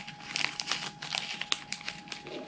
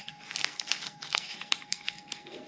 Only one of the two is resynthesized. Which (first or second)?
second